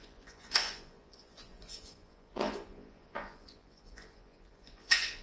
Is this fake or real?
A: fake